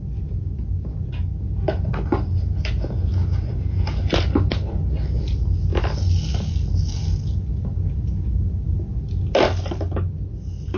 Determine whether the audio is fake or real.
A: real